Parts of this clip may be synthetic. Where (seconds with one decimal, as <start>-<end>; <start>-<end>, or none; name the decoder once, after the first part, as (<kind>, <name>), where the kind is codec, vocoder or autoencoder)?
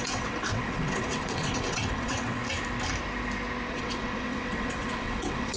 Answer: 0.0-2.4 (vocoder, WaveNeXt); 3.7-5.6